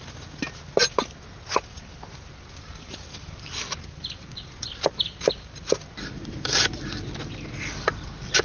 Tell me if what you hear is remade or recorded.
recorded